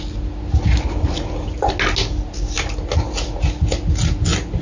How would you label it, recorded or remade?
recorded